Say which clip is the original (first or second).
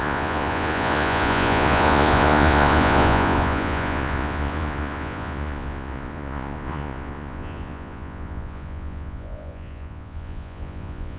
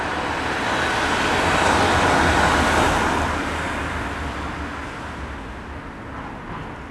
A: second